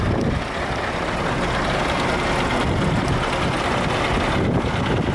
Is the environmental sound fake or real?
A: real